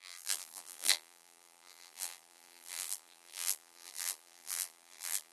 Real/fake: fake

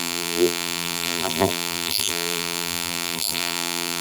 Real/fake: fake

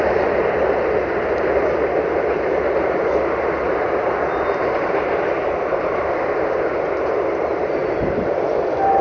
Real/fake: fake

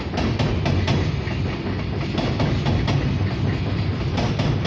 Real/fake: real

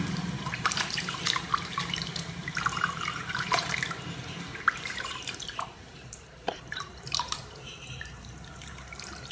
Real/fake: fake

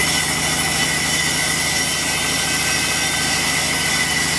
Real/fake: real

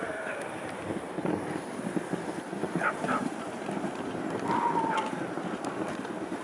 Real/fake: fake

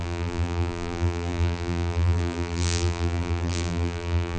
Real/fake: fake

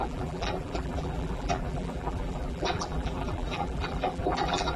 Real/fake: fake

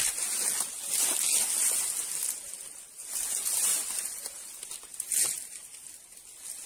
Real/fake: real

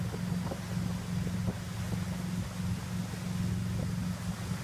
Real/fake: real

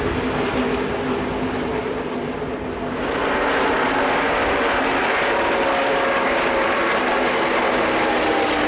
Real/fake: real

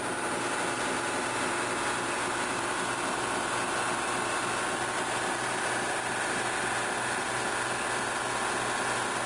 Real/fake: real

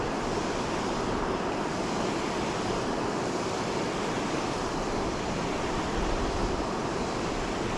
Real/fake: real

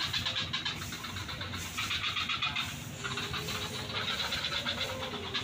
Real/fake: real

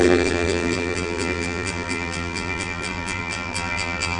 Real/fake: fake